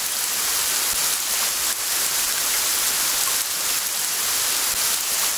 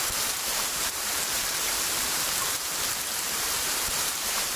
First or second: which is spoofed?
second